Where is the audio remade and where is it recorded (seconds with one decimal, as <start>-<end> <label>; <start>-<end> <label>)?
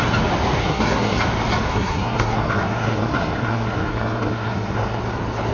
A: 0.0-0.6 recorded; 0.6-1.2 remade; 1.2-1.7 recorded; 1.7-5.0 remade; 5.0-5.5 recorded